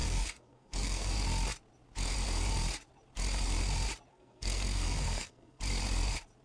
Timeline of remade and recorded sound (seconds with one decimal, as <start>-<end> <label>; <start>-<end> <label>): 0.0-1.1 remade; 1.1-4.1 recorded; 4.1-5.6 remade; 5.6-6.4 recorded